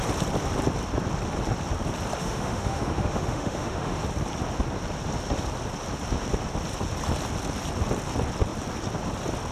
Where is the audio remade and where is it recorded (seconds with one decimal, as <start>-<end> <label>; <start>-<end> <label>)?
0.0-2.2 recorded; 2.2-4.0 remade; 4.0-9.5 recorded